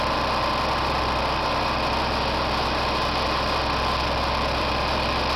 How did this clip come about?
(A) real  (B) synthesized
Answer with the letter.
A